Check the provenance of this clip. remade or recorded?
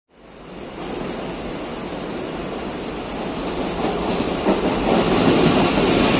recorded